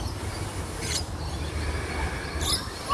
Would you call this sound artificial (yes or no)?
no